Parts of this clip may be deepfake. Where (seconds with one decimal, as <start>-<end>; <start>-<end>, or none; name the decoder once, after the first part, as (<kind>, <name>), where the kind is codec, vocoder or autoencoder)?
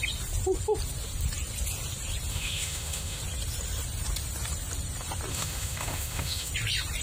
2.3-3.2 (autoencoder, DAC-VAE); 5.3-6.5